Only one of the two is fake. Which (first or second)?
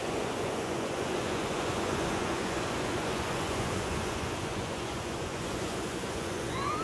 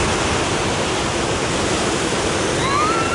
first